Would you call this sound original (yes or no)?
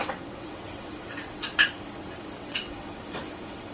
no